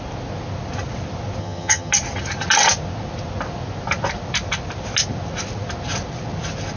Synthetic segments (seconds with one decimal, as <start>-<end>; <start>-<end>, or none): 1.4-1.9